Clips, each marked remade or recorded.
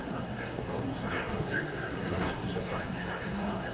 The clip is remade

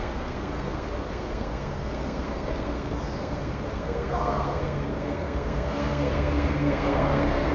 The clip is remade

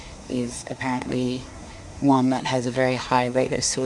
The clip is remade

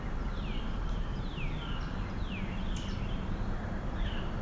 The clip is recorded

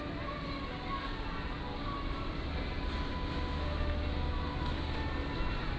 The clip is recorded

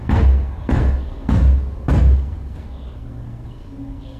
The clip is remade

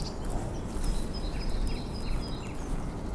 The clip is recorded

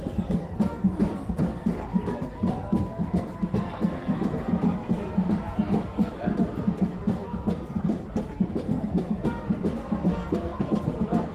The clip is remade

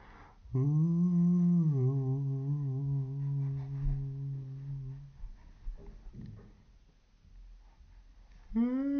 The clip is recorded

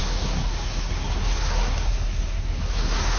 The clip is remade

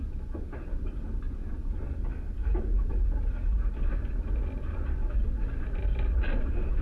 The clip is recorded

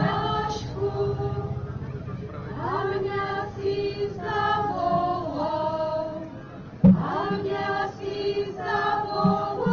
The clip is recorded